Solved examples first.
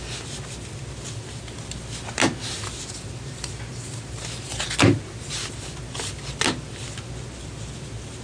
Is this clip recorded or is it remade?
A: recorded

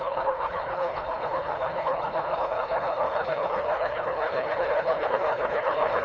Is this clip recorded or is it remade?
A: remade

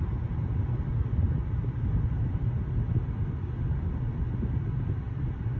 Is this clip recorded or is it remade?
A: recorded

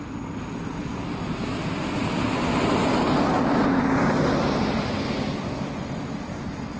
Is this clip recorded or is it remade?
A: recorded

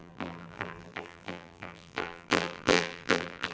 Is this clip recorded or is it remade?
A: remade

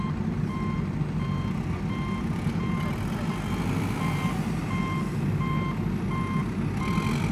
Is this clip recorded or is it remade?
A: recorded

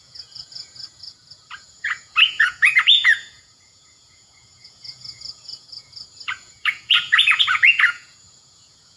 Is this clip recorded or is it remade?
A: remade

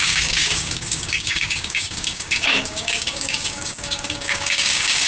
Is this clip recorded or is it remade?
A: remade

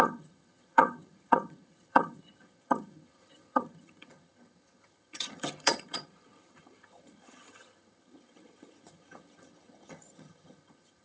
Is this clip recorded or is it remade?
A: remade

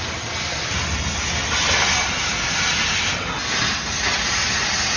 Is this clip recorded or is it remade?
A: recorded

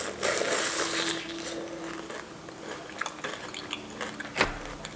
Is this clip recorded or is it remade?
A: recorded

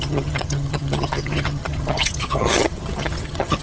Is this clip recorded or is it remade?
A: remade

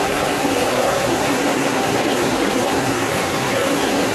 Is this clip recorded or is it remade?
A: remade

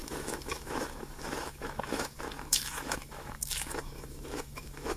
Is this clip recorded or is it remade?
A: remade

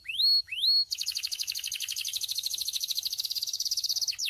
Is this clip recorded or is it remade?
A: remade